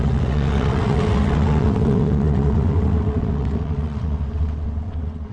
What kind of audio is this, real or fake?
fake